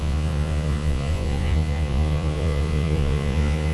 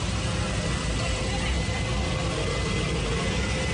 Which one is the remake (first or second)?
first